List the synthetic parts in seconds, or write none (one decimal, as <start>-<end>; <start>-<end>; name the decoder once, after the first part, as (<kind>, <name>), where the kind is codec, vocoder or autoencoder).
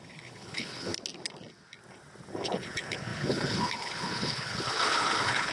0.0-0.9 (codec, HILCodec); 2.3-5.5